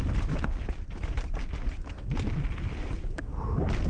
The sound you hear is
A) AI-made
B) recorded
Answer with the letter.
B